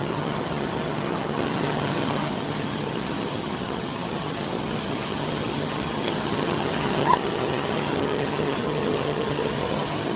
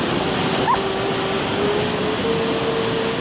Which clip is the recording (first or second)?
second